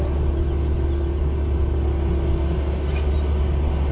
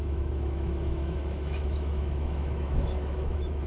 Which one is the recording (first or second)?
first